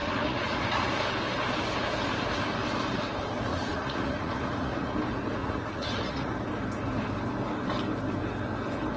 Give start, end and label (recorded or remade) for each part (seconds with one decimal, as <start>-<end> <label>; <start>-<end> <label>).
0.0-0.9 remade; 0.9-3.5 recorded; 3.5-4.9 remade; 4.9-5.4 recorded; 5.4-6.3 remade; 6.3-9.0 recorded